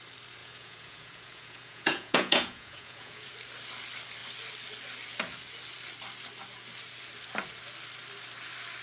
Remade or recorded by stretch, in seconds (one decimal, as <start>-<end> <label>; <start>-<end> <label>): 0.0-0.4 recorded; 0.4-3.3 remade; 3.3-8.8 recorded